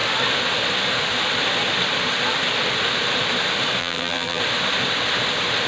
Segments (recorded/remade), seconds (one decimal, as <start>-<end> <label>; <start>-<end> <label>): 0.0-3.8 recorded; 3.8-4.4 remade; 4.4-5.7 recorded